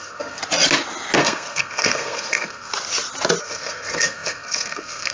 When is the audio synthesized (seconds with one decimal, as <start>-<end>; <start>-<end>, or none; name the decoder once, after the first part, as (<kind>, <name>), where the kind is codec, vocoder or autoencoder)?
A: 0.0-0.4 (codec, SNAC); 1.2-2.7; 3.4-5.1